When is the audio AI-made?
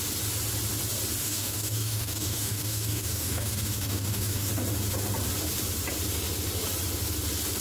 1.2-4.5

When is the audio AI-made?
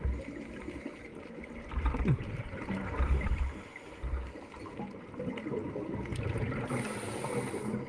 1.1-3.6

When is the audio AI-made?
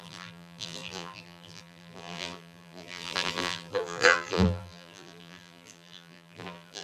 0.0-6.8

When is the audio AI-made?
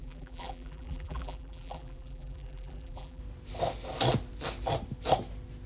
0.0-3.2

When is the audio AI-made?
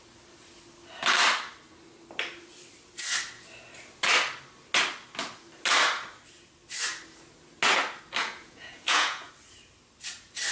8.2-9.3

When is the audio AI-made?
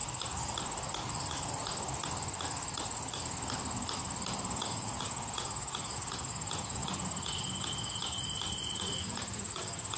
4.6-10.0